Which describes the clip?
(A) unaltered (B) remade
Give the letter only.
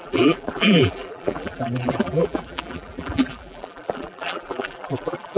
B